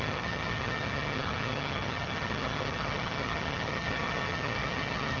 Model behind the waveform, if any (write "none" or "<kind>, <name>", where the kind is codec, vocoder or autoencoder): vocoder, HiFi-GAN